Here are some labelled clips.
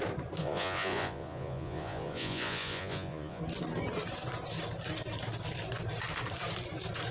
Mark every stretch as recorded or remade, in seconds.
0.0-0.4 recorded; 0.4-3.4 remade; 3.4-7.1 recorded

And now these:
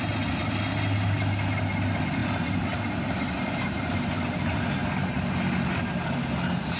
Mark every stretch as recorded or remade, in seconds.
0.0-6.8 recorded